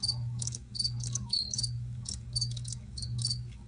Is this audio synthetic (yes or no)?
yes